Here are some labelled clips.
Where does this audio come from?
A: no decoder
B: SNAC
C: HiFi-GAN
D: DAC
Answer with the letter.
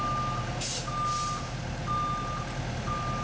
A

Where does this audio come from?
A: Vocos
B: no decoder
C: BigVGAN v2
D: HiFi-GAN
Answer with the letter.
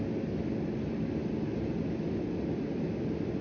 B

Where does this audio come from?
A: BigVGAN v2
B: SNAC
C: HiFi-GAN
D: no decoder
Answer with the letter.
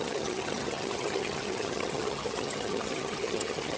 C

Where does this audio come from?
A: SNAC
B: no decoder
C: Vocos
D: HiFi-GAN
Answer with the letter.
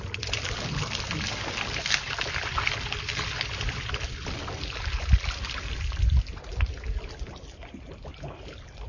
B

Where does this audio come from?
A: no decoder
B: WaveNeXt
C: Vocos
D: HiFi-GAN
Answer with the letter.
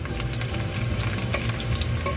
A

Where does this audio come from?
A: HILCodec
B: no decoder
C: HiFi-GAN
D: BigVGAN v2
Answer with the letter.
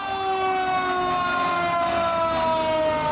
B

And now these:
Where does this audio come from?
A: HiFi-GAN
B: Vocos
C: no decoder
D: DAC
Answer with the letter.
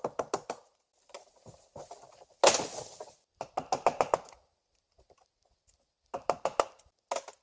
C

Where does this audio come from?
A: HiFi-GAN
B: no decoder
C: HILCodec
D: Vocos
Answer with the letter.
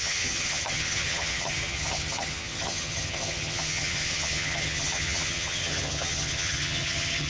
A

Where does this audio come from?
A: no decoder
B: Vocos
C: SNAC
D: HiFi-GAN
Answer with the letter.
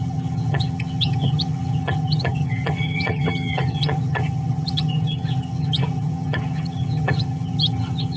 D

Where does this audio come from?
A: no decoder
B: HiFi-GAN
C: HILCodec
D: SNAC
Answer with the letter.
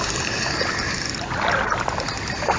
A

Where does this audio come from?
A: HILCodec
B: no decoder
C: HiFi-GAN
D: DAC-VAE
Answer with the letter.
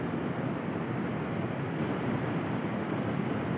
B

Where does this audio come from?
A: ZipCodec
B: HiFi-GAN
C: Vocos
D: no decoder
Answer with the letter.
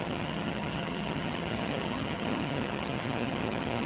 B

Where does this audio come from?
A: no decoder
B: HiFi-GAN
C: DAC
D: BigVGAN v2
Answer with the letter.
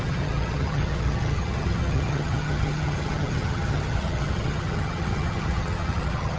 B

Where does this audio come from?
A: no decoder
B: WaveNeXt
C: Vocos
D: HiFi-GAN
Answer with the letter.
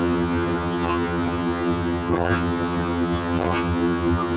D